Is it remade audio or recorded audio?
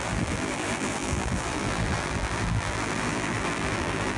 remade